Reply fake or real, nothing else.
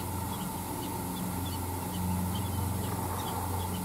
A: real